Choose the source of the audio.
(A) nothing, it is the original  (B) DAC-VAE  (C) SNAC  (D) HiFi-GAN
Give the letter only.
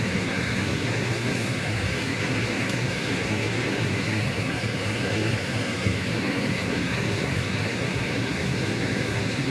C